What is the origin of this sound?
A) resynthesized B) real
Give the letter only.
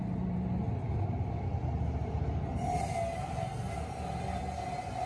B